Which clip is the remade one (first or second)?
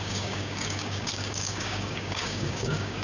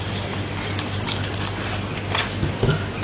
first